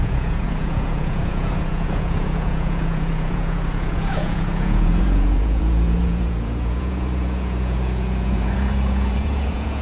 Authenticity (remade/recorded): remade